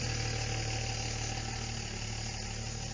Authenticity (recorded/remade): recorded